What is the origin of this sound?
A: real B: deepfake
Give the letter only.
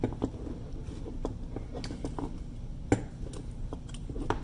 A